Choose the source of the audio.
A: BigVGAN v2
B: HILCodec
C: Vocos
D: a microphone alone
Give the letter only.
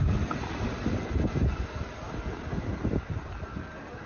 D